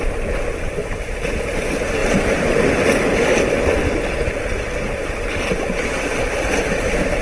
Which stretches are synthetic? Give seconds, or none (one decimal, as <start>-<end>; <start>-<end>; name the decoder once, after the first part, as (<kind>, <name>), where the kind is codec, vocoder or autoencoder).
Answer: none